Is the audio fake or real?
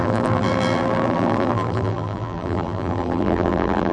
fake